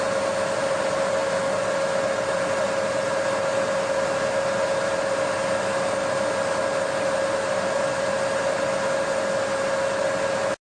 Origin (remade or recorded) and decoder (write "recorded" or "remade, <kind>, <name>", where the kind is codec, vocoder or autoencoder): recorded